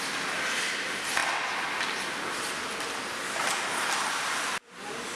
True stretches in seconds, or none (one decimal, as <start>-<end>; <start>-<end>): 0.0-5.2